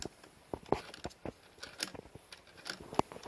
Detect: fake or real real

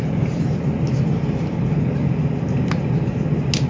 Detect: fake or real real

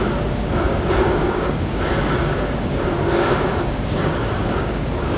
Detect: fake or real fake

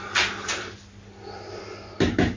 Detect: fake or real real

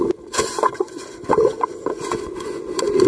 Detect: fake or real fake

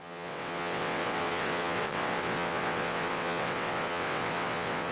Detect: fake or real fake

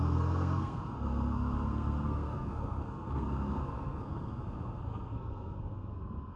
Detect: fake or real fake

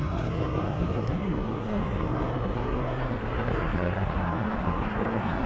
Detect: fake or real fake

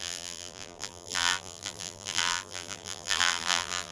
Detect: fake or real fake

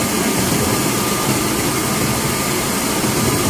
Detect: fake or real real